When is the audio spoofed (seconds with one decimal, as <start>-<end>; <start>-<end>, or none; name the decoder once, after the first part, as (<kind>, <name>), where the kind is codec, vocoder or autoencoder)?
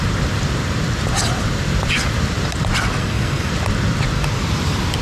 3.0-3.5 (codec, SNAC)